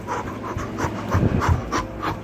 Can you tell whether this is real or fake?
real